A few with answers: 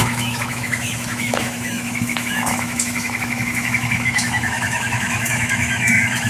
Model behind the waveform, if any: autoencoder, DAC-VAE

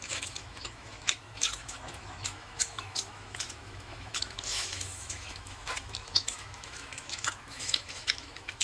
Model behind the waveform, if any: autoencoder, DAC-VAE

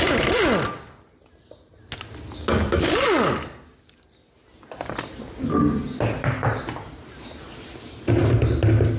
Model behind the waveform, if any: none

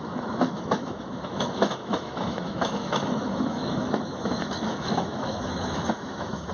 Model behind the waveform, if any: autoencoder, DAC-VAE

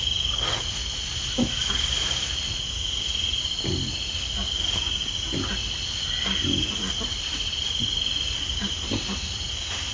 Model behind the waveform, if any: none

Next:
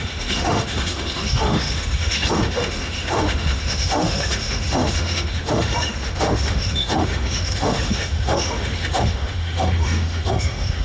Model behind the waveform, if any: autoencoder, DAC-VAE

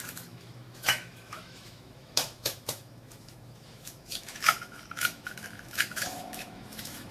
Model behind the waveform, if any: autoencoder, DAC-VAE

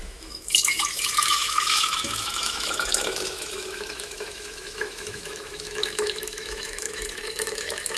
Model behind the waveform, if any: autoencoder, DAC-VAE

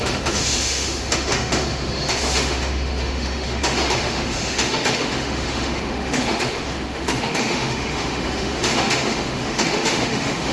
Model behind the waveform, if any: autoencoder, DAC-VAE